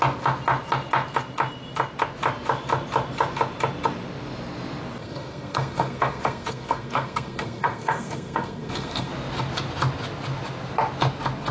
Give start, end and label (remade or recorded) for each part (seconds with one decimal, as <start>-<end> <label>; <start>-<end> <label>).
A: 0.0-5.0 recorded; 5.0-9.1 remade; 9.1-11.5 recorded